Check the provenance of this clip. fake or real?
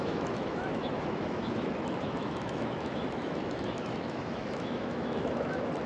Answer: fake